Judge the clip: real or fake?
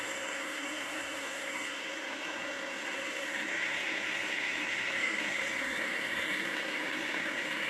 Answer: fake